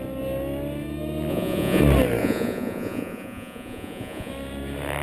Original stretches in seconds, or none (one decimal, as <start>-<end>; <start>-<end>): 0.0-1.3; 1.8-2.2; 4.3-5.0